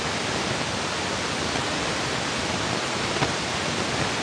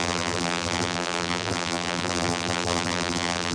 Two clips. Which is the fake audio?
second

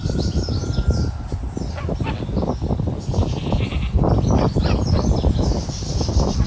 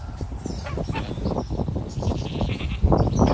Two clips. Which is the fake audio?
first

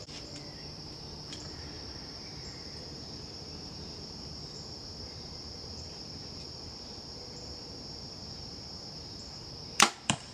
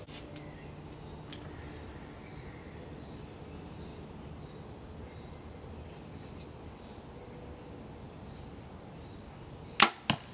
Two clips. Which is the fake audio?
first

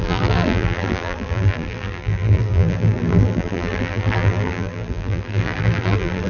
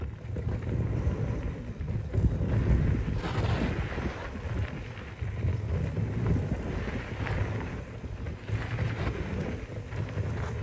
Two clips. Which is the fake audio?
first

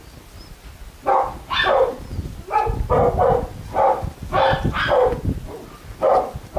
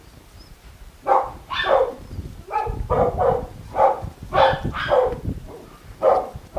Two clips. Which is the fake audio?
second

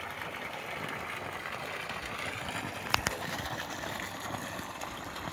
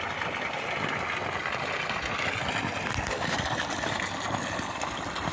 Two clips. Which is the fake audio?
first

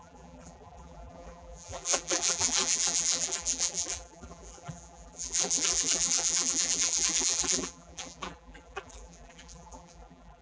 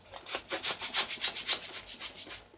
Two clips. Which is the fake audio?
first